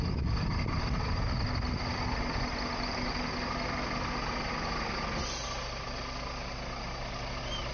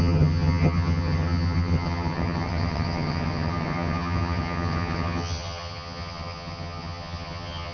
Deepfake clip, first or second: second